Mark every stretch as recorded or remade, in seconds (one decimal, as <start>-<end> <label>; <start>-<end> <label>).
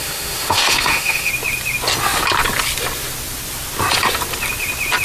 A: 0.0-1.3 remade; 1.3-5.0 recorded